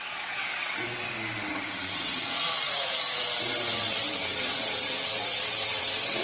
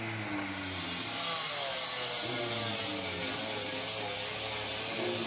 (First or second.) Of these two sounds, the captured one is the second